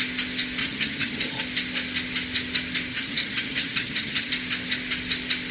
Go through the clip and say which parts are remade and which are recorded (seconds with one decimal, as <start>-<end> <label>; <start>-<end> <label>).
0.0-0.6 recorded; 0.6-1.4 remade; 1.4-2.9 recorded; 2.9-4.3 remade; 4.3-5.5 recorded